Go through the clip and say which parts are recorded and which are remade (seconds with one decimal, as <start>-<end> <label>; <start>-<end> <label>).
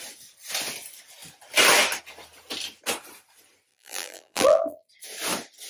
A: 0.0-3.7 recorded; 3.7-4.9 remade; 4.9-5.7 recorded